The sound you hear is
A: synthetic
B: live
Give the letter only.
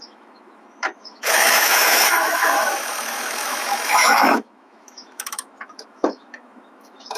A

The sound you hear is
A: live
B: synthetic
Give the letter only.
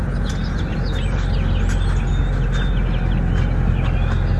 A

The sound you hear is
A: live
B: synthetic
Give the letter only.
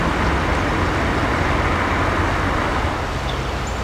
A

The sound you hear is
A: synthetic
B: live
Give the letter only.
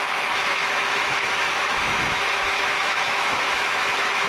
A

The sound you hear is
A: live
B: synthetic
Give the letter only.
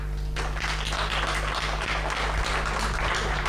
A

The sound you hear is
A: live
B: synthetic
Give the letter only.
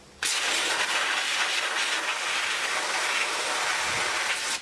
A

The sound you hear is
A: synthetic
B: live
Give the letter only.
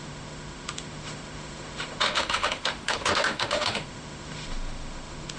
A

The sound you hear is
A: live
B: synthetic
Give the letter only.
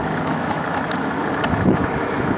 B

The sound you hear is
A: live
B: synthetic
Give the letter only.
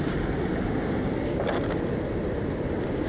A